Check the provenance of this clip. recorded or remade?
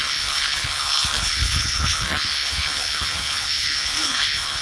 remade